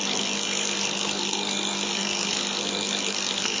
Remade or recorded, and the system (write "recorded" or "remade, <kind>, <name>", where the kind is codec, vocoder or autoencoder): remade, codec, SNAC